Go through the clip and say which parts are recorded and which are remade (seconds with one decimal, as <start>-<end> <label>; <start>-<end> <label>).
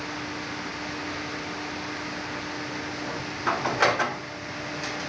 0.0-5.1 recorded